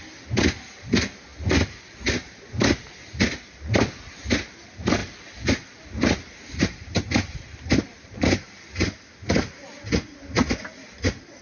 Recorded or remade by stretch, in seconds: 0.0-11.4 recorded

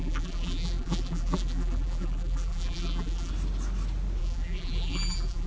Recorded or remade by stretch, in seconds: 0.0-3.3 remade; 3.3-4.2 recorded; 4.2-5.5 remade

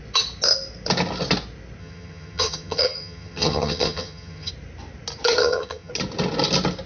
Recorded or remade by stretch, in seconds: 0.0-1.8 recorded; 1.8-4.5 remade; 4.5-5.4 recorded; 5.4-5.9 remade; 5.9-6.9 recorded

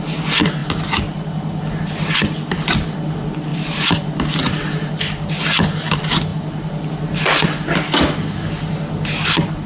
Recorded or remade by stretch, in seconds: 0.0-9.7 recorded

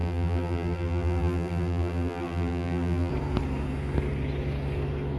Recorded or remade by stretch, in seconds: 0.0-3.1 remade; 3.1-5.2 recorded

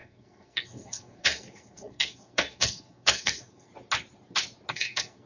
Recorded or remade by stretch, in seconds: 0.0-3.7 remade; 3.7-4.7 recorded; 4.7-5.3 remade

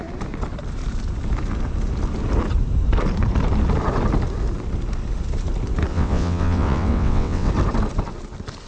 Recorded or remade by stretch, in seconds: 0.0-5.9 recorded; 5.9-7.5 remade; 7.5-8.7 recorded

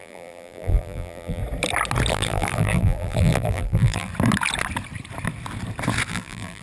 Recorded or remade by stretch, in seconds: 0.0-1.4 remade; 1.4-2.1 recorded; 2.1-4.1 remade; 4.1-6.1 recorded; 6.1-6.6 remade